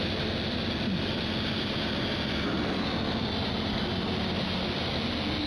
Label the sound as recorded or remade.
recorded